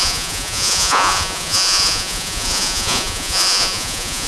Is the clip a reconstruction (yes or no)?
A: yes